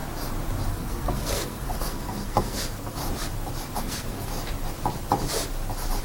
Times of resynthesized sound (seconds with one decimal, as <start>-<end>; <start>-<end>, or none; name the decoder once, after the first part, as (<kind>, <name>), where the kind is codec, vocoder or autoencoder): 0.7-3.0 (codec, SNAC); 3.8-4.3

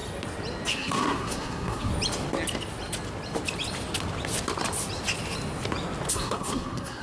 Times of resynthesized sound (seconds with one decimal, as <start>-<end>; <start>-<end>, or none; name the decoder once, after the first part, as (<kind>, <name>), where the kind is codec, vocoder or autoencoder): 0.7-1.9 (codec, SNAC); 6.1-7.0

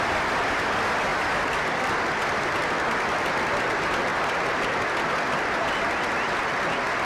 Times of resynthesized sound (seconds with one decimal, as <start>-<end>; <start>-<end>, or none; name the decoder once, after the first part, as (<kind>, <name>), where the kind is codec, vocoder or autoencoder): none